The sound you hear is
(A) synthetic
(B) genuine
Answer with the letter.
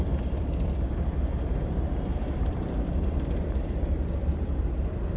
A